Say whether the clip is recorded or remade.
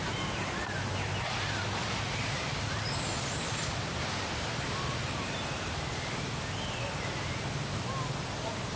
recorded